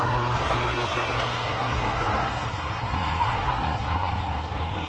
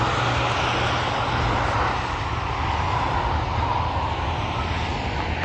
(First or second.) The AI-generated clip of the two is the first